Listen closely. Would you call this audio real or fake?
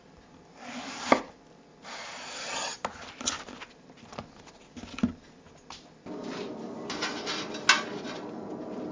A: real